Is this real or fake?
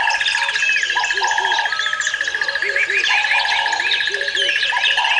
real